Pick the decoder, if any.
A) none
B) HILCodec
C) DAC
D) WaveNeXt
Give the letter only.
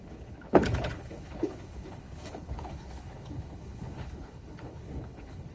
B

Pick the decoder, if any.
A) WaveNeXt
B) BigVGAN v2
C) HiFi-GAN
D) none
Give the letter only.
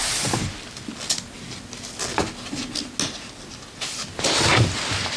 D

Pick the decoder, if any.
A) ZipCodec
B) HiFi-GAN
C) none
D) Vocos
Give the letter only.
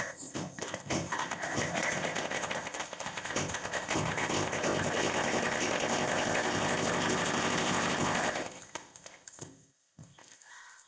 A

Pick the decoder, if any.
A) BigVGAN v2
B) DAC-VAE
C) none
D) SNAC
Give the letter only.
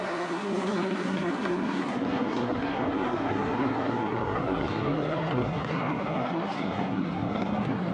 D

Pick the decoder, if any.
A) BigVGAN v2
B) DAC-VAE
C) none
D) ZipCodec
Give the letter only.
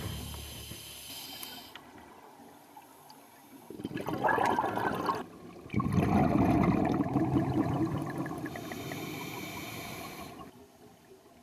C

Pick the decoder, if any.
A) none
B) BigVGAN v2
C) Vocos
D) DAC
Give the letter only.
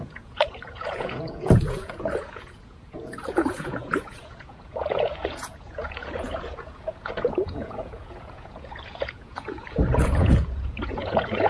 C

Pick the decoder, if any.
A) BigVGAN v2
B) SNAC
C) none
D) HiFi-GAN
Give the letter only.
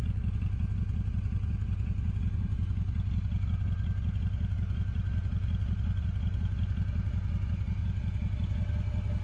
C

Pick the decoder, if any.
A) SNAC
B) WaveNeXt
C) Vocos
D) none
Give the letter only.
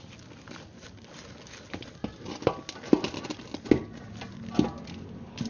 D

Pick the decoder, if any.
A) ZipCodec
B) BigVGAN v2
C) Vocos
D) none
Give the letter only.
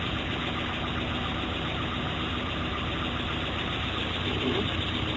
D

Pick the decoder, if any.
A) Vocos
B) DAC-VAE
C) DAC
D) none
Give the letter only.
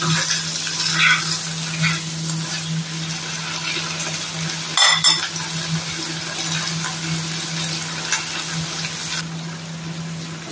D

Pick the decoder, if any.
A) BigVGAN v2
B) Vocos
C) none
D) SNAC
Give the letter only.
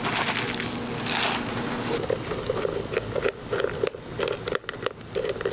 C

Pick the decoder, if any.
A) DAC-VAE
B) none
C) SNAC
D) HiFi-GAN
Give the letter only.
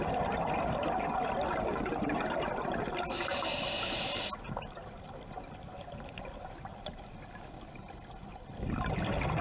B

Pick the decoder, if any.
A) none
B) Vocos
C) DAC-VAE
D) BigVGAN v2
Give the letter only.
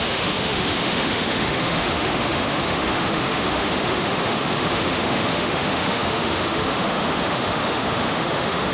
C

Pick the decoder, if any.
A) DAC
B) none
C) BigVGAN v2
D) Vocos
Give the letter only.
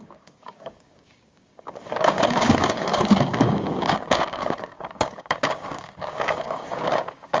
A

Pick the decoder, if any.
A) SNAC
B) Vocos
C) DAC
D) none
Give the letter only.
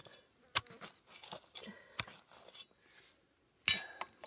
D